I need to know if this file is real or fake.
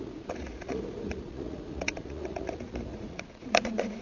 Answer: fake